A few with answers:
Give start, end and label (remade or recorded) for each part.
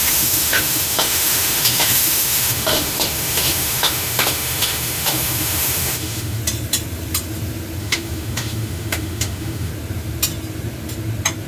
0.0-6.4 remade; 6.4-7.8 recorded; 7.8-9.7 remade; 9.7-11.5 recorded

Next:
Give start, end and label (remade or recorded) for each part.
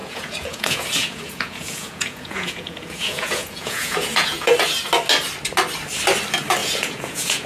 0.0-4.5 remade; 4.5-6.6 recorded; 6.6-7.5 remade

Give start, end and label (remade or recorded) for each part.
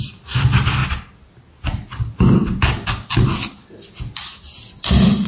0.0-5.3 recorded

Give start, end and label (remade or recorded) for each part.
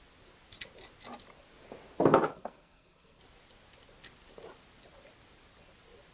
0.0-2.3 recorded; 2.3-3.2 remade; 3.2-6.1 recorded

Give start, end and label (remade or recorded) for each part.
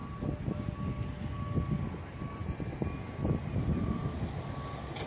0.0-5.1 recorded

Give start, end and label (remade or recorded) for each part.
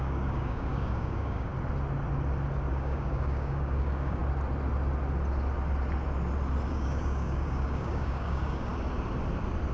0.0-1.5 remade; 1.5-2.7 recorded; 2.7-4.2 remade; 4.2-6.7 recorded; 6.7-8.7 remade; 8.7-9.7 recorded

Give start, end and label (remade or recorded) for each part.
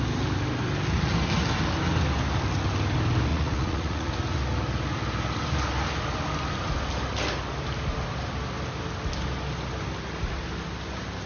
0.0-3.3 recorded; 3.3-4.1 remade; 4.1-11.3 recorded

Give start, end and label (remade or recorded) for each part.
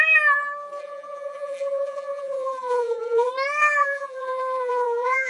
0.0-0.8 recorded; 0.8-3.3 remade; 3.3-3.8 recorded; 3.8-5.3 remade